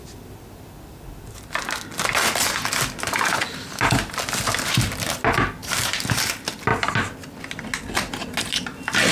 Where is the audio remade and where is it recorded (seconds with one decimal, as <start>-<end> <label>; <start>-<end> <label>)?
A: 0.0-5.6 recorded; 5.6-6.3 remade; 6.3-9.1 recorded